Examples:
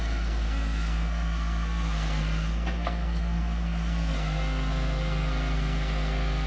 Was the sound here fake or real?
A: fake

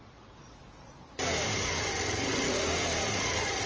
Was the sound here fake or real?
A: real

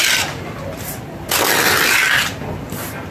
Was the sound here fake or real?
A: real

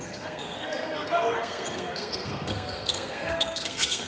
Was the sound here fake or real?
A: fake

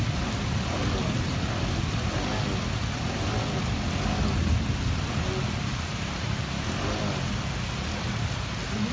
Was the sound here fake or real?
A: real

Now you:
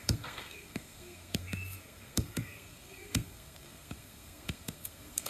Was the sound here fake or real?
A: fake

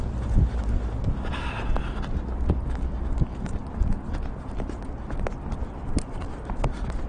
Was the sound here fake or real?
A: real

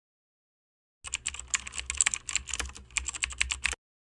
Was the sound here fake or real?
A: real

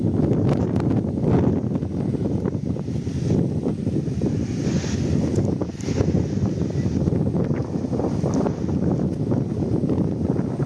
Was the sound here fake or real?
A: real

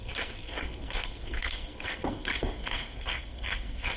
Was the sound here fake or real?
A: fake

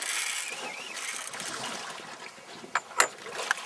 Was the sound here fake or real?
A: real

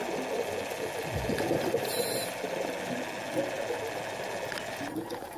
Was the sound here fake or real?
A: real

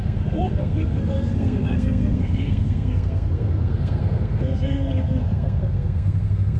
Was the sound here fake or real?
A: fake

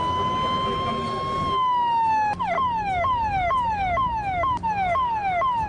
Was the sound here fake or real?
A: real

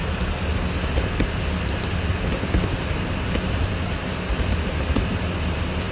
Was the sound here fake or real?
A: real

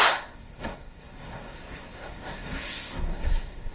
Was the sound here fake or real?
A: fake